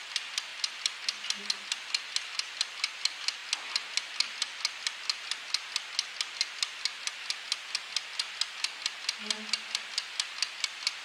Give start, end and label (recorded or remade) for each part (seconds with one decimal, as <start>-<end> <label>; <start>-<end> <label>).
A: 0.0-11.0 recorded